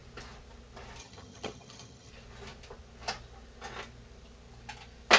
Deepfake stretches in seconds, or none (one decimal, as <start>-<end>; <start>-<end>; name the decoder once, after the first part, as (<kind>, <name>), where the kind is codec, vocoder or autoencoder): 1.0-2.1 (vocoder, HiFi-GAN)